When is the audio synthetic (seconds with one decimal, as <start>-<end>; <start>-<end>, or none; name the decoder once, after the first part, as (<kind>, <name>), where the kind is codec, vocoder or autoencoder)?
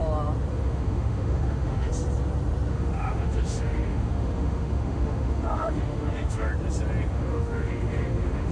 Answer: 0.5-1.9 (autoencoder, DAC-VAE); 2.7-6.5; 7.1-8.5